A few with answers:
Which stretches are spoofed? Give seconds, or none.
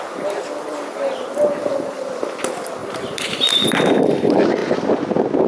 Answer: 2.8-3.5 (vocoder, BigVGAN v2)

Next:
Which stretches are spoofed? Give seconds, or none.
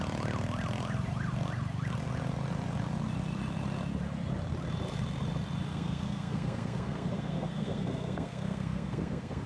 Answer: 5.7-9.5 (codec, SNAC)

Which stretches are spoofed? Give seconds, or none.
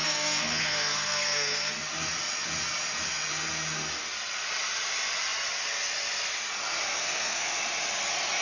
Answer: 0.0-1.7 (codec, SNAC); 7.0-7.5